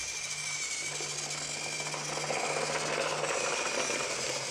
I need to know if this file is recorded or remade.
recorded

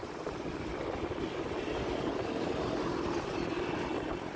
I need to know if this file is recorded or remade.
recorded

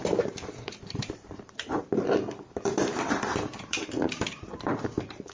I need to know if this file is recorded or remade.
remade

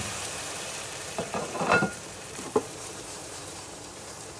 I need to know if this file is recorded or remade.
remade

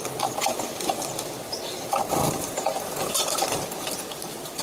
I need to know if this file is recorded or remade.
recorded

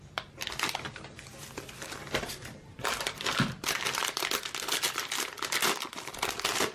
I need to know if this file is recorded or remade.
recorded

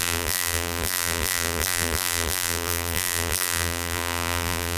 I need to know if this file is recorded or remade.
remade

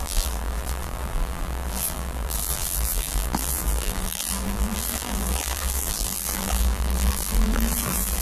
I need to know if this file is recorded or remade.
remade